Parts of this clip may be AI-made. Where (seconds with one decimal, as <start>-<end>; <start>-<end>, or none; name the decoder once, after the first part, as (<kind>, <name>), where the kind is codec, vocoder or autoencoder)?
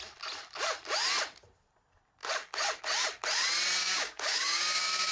3.8-5.1 (codec, DAC)